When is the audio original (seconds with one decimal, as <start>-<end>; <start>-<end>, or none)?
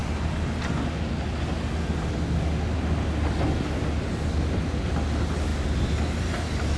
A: 0.0-6.8